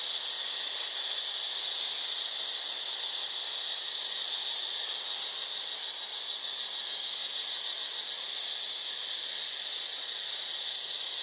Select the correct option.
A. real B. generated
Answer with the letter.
A